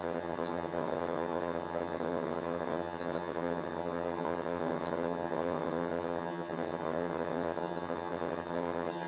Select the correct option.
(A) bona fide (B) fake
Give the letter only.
B